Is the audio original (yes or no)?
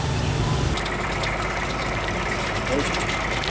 yes